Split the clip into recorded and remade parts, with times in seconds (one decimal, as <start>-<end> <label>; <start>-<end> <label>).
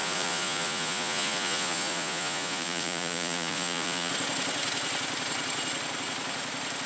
0.0-4.1 remade; 4.1-6.9 recorded